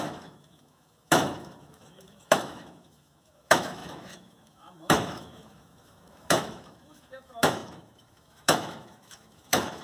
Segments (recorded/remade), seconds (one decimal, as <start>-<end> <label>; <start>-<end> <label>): 0.0-9.8 remade